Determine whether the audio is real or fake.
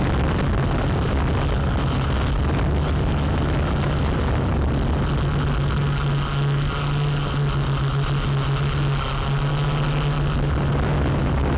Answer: real